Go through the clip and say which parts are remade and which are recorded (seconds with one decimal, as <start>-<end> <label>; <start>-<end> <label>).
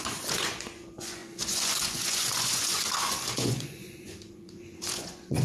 0.0-5.4 remade